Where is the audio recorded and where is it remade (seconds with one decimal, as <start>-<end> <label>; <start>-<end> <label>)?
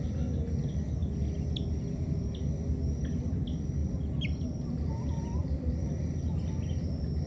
0.0-1.0 recorded; 1.0-3.3 remade; 3.3-3.8 recorded; 3.8-4.9 remade; 4.9-5.4 recorded; 5.4-6.0 remade; 6.0-7.3 recorded